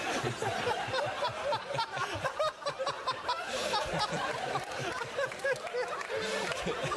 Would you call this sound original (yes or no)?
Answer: yes